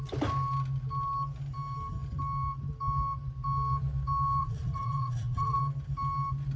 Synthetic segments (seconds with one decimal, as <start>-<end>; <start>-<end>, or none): 4.4-5.6